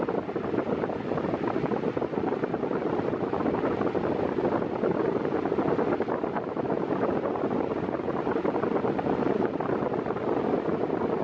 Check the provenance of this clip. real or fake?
real